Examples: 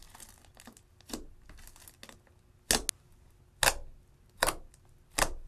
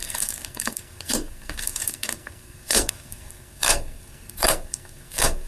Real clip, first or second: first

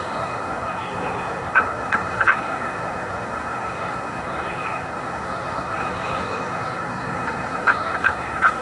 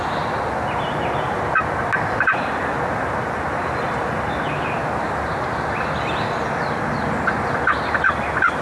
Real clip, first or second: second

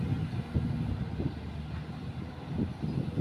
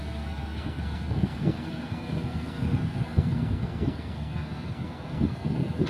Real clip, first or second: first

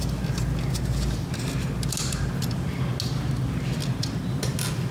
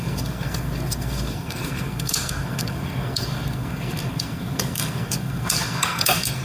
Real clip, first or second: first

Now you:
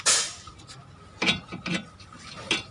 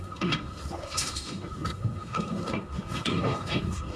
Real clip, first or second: first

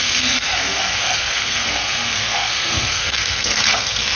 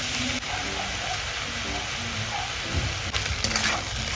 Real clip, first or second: second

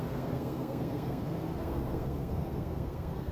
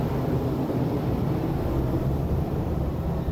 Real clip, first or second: second